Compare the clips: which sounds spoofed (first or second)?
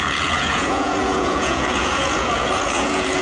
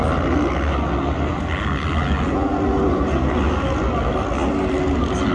first